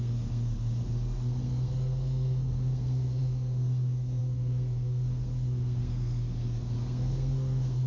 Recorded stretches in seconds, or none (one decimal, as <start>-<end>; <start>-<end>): none